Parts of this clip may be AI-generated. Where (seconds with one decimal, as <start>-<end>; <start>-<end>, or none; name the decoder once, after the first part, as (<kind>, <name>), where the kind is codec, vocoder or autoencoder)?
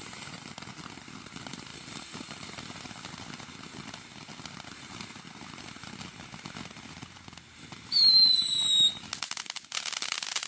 1.7-2.6 (vocoder, BigVGAN v2)